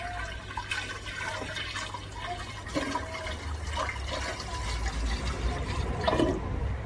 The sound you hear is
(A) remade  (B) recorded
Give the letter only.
B